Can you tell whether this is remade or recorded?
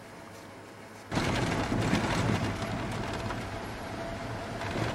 recorded